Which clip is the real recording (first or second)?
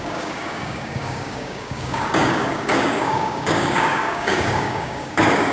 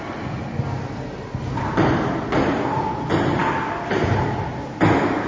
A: second